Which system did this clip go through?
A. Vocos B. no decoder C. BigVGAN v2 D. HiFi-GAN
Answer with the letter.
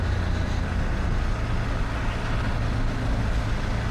B